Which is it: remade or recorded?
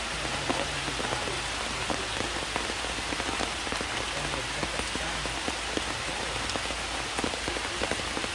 recorded